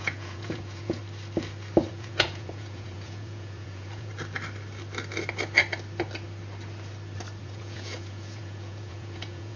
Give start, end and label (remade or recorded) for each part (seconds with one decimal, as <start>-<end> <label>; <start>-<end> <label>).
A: 0.0-1.0 remade; 1.0-1.9 recorded; 1.9-4.1 remade; 4.1-7.4 recorded; 7.4-9.6 remade